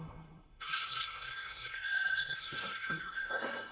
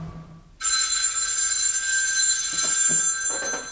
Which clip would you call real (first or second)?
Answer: second